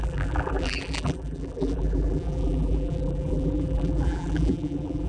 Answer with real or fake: fake